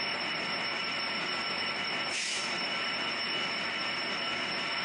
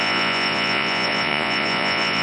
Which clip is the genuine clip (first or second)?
first